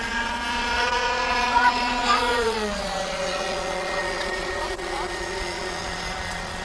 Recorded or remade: remade